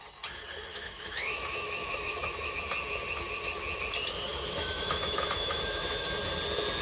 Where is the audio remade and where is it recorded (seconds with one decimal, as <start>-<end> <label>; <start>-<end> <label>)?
0.0-0.7 recorded; 0.7-2.6 remade; 2.6-4.3 recorded; 4.3-6.2 remade; 6.2-6.8 recorded